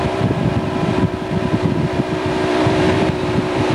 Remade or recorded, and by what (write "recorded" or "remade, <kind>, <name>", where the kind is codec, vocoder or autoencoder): remade, vocoder, BigVGAN v2